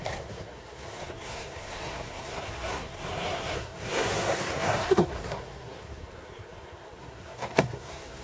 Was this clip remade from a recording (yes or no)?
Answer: yes